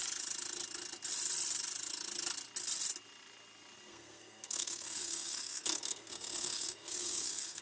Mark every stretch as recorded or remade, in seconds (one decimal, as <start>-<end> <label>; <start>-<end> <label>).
0.0-3.9 recorded; 3.9-7.6 remade